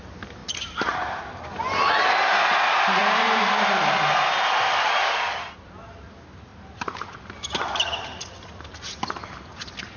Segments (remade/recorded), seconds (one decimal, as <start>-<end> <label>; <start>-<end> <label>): 0.0-3.0 recorded; 3.0-3.8 remade; 3.8-6.5 recorded; 6.5-7.2 remade; 7.2-10.0 recorded